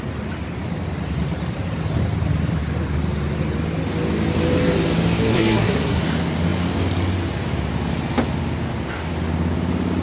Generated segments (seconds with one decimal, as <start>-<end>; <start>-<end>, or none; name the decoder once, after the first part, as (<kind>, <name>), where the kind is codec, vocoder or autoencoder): 5.3-6.0 (codec, SNAC)